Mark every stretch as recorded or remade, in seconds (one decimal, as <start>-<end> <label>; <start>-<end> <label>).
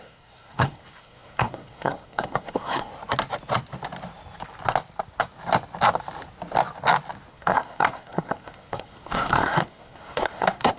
0.0-2.9 remade; 2.9-7.3 recorded; 7.3-10.8 remade